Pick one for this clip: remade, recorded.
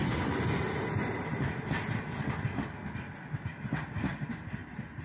recorded